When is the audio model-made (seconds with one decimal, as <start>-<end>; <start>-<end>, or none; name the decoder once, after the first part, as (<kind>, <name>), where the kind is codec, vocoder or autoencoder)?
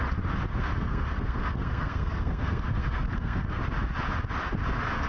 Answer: 0.5-3.6 (codec, SNAC)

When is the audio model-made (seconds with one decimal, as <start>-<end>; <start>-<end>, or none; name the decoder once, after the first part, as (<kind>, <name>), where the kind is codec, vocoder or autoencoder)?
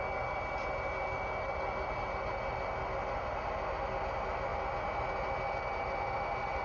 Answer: none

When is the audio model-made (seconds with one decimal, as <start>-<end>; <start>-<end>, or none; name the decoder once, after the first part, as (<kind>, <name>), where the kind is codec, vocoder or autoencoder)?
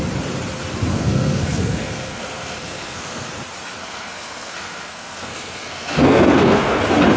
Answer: 0.9-3.3 (codec, SNAC); 3.8-6.8